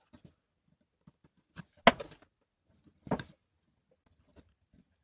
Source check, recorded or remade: recorded